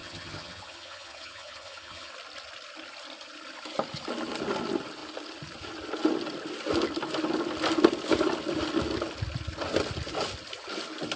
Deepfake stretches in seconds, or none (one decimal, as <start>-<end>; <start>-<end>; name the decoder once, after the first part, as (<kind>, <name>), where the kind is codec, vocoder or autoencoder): 0.0-2.1 (vocoder, HiFi-GAN)